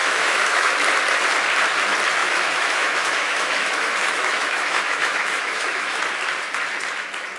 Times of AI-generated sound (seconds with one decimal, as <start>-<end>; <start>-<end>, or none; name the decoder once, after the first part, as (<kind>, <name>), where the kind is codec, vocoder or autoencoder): 0.0-0.7 (autoencoder, DAC-VAE); 2.2-6.0

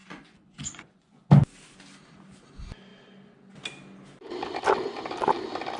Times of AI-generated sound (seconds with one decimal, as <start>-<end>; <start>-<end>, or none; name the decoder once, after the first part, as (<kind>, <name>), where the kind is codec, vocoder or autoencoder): 0.0-1.3 (vocoder, Vocos)